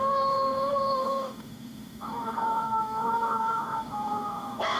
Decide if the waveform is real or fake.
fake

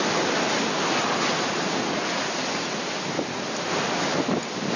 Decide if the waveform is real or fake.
real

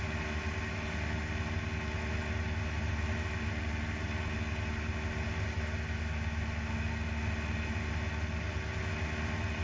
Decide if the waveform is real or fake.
real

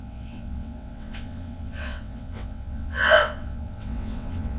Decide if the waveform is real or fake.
fake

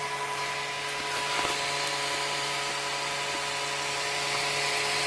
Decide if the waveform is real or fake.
real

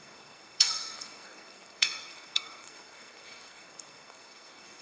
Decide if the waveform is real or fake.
fake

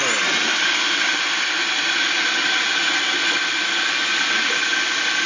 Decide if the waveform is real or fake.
real